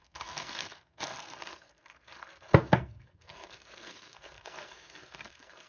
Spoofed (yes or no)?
yes